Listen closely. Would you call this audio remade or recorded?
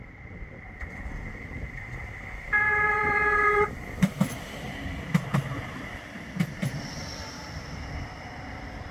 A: remade